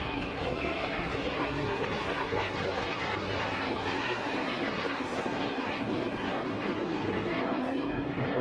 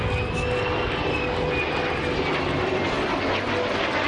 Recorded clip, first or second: second